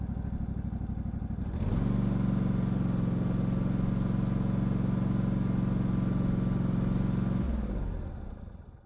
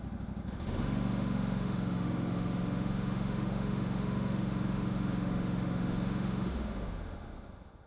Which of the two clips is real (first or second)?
first